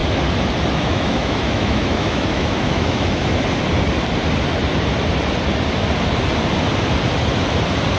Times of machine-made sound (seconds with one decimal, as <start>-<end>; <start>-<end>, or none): 0.7-3.2